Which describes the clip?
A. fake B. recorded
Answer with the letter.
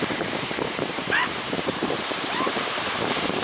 A